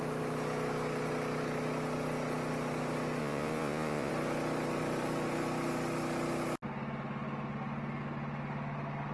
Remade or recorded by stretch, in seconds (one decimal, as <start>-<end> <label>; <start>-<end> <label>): 0.0-3.2 recorded; 3.2-4.1 remade; 4.1-9.1 recorded